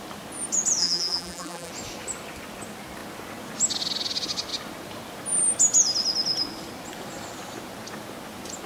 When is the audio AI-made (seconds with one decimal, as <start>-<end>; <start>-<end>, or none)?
0.8-1.7